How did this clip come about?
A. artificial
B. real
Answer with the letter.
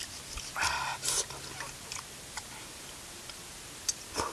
B